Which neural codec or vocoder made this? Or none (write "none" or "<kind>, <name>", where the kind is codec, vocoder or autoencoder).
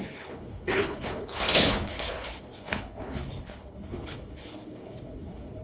codec, HILCodec